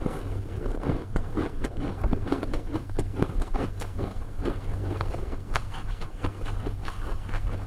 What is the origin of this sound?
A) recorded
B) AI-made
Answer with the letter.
B